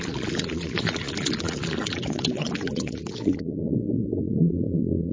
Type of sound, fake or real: fake